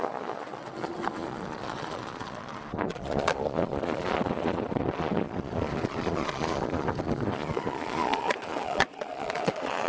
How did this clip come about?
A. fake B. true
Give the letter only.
A